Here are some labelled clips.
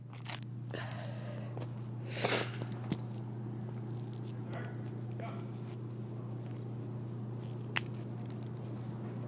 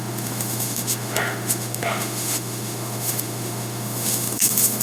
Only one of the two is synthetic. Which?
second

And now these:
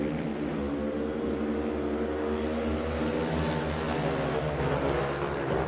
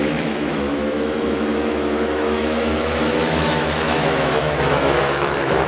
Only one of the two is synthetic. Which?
second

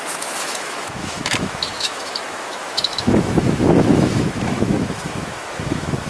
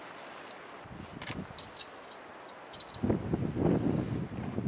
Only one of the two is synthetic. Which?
first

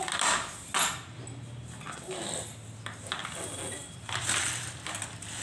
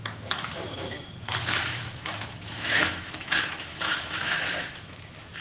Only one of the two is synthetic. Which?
second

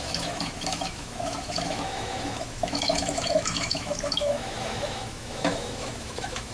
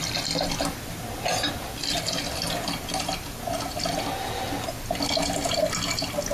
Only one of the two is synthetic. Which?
first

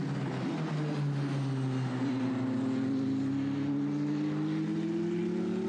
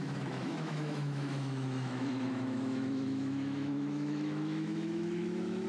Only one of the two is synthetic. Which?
second